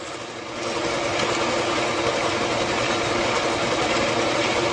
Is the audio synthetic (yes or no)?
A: no